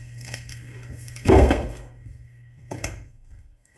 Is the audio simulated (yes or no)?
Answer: yes